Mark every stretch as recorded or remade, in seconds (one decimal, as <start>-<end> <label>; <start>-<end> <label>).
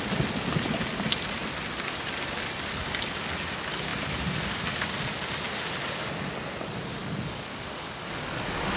0.0-7.0 recorded; 7.0-8.8 remade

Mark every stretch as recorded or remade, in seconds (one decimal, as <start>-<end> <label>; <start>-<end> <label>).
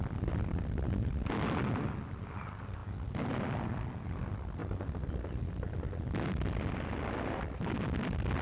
0.0-8.4 recorded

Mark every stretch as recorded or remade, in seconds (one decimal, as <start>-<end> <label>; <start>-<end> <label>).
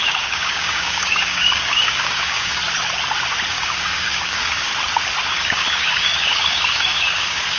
0.0-2.6 remade; 2.6-3.5 recorded; 3.5-4.7 remade; 4.7-5.4 recorded; 5.4-7.6 remade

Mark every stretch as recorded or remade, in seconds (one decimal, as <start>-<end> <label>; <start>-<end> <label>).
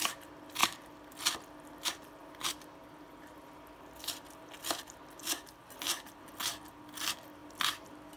0.0-8.2 recorded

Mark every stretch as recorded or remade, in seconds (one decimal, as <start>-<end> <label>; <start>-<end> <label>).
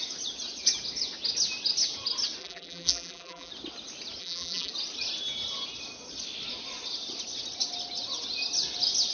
0.0-2.4 recorded; 2.4-3.5 remade; 3.5-4.2 recorded; 4.2-4.7 remade; 4.7-9.1 recorded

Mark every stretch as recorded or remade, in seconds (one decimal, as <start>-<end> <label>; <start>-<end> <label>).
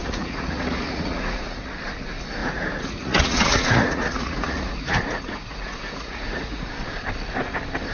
0.0-1.6 remade; 1.6-2.4 recorded; 2.4-6.7 remade; 6.7-7.9 recorded